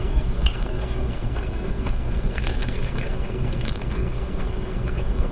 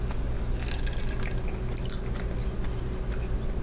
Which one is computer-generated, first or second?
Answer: first